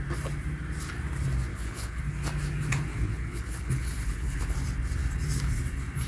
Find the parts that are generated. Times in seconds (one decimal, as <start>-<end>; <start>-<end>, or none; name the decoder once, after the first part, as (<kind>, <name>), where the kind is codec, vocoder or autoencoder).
1.5-2.0 (codec, HILCodec); 2.9-4.4